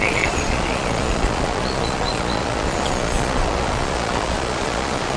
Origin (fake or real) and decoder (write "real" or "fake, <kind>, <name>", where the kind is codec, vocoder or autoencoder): fake, vocoder, Vocos